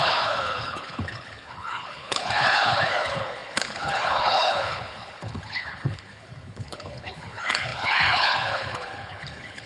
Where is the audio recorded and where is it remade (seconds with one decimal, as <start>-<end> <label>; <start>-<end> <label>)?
0.0-9.7 remade